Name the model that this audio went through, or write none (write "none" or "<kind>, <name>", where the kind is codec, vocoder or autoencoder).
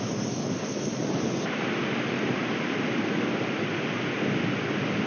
none